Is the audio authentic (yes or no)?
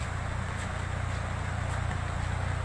yes